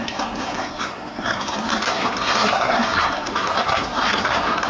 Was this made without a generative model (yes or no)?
no